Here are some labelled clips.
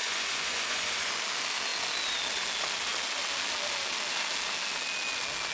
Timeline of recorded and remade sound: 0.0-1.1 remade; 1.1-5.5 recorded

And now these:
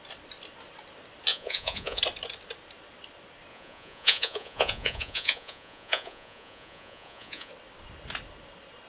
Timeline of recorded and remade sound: 0.0-1.3 recorded; 1.3-2.0 remade; 2.0-3.5 recorded; 3.5-7.5 remade; 7.5-8.9 recorded

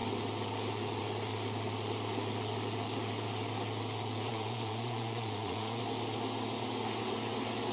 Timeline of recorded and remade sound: 0.0-4.3 recorded; 4.3-5.8 remade; 5.8-7.7 recorded

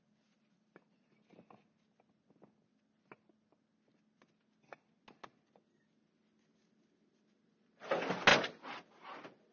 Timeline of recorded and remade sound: 0.0-9.5 recorded

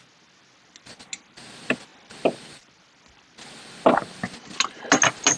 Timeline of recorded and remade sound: 0.0-5.4 recorded

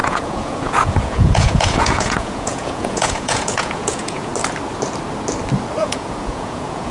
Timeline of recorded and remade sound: 0.0-4.3 remade; 4.3-5.8 recorded; 5.8-6.9 remade

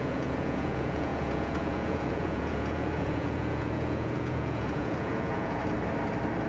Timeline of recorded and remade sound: 0.0-5.6 remade; 5.6-6.5 recorded